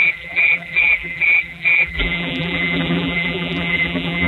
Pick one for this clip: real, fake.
fake